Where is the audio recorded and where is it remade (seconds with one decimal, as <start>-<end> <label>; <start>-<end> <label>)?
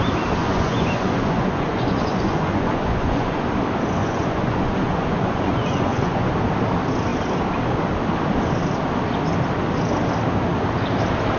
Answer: 0.0-0.4 recorded; 0.4-3.5 remade; 3.5-4.0 recorded; 4.0-6.3 remade; 6.3-11.4 recorded